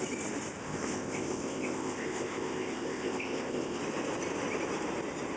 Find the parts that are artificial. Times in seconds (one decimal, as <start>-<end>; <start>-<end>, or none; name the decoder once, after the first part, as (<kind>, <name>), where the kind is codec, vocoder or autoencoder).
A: 0.6-3.8 (codec, ZipCodec)